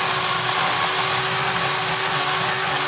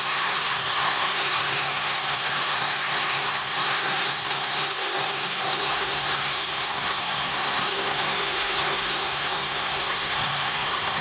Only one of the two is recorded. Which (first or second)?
first